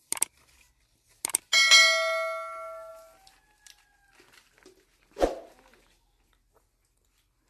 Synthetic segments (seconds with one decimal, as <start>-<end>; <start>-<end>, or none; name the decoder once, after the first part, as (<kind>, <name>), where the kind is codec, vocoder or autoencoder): none

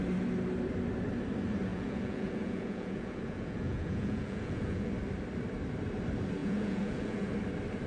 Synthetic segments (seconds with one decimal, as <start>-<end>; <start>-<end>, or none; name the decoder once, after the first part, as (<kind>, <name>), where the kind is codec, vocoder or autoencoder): 1.7-4.9 (vocoder, Vocos); 6.4-7.3